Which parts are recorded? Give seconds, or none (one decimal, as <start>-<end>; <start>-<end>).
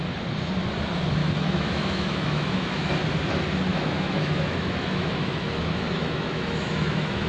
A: 0.0-1.2; 2.9-3.7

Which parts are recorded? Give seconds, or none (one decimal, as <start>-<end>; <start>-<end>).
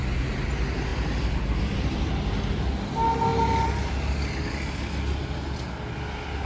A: 0.0-6.5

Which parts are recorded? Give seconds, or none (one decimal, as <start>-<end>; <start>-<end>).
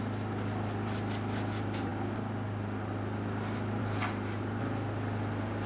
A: 0.0-5.7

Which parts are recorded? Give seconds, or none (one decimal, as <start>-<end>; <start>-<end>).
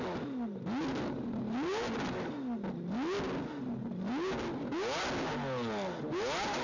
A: 0.0-6.6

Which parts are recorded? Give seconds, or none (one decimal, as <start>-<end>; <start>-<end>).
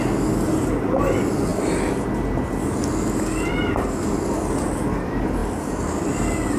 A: 0.0-6.6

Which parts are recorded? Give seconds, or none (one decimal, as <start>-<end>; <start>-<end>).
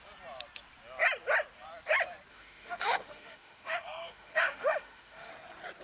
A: 0.0-2.3; 5.3-5.8